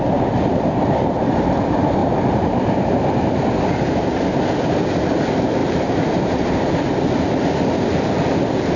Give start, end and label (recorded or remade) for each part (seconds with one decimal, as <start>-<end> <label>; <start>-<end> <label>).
0.0-2.0 recorded; 2.0-2.7 remade; 2.7-5.6 recorded; 5.6-6.9 remade; 6.9-8.8 recorded